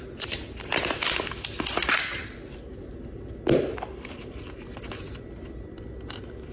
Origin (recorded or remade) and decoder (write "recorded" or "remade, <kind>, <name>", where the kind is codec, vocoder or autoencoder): recorded